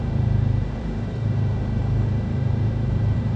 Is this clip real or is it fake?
fake